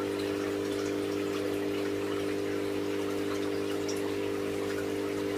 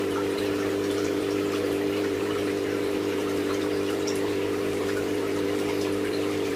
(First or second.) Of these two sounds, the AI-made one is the second